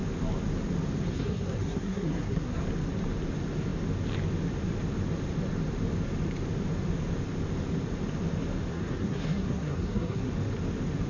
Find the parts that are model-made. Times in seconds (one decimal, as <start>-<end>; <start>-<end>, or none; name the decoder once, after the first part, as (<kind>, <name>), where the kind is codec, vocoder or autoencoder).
1.1-2.6 (codec, SNAC); 8.7-10.3